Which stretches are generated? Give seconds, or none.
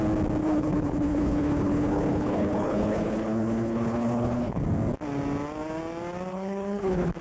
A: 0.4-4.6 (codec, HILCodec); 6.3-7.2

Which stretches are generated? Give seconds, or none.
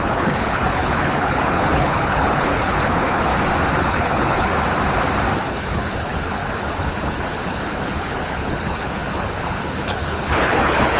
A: 0.0-3.3 (codec, HILCodec); 3.8-4.5; 5.5-11.0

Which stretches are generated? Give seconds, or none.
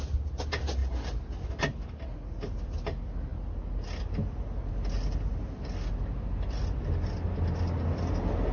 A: none